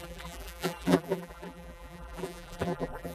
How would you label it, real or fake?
fake